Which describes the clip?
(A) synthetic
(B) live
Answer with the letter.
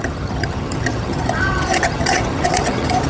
A